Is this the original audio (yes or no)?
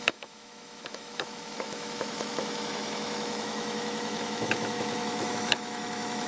no